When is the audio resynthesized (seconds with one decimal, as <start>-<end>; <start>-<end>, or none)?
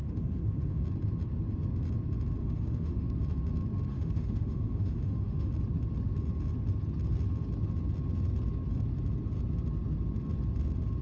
0.0-0.8; 2.4-3.1; 3.9-5.5